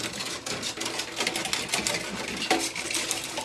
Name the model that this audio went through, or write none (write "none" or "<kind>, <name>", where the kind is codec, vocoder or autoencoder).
none